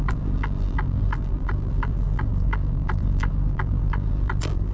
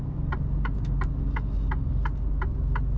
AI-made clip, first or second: first